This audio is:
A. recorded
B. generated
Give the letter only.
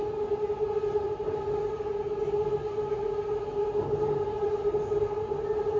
A